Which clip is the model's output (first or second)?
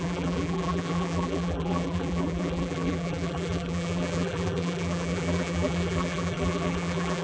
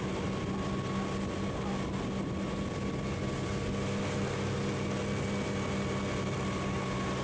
first